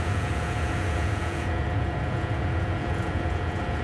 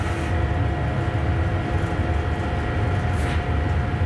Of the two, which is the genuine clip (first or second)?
second